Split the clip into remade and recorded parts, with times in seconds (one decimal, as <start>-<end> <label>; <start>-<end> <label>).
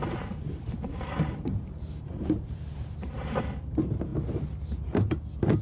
0.0-3.4 remade; 3.4-5.6 recorded